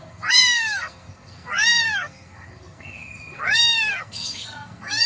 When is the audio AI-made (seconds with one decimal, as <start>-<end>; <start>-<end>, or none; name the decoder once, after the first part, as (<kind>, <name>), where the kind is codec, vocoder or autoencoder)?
0.0-5.1 (codec, SNAC)